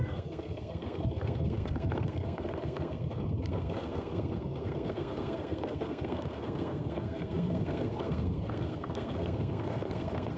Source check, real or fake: fake